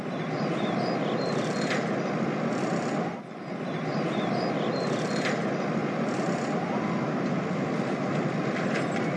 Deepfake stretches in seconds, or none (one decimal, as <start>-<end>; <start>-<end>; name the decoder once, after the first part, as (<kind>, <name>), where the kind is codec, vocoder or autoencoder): 5.8-6.8 (vocoder, BigVGAN v2)